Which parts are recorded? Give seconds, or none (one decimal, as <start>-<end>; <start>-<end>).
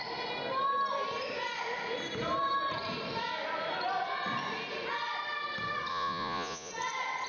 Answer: 0.0-5.9; 6.7-7.3